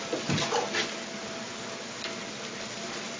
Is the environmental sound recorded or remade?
recorded